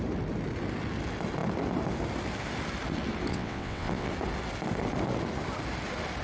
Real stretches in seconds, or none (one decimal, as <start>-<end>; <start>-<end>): 0.0-3.3; 4.1-6.2